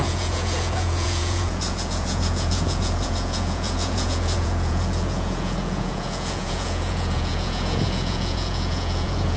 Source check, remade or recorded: remade